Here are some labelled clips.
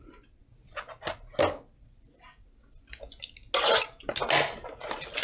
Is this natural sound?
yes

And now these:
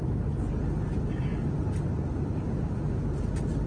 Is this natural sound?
yes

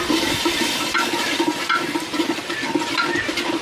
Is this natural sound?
yes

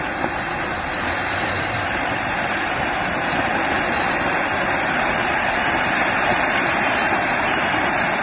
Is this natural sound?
no